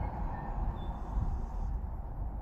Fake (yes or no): no